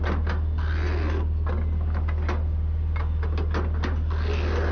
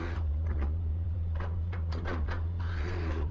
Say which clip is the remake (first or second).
second